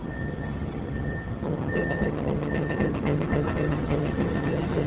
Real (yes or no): no